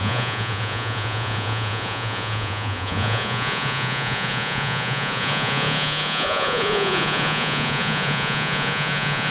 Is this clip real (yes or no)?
no